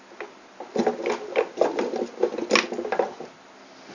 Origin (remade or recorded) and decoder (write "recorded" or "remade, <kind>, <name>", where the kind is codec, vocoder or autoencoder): recorded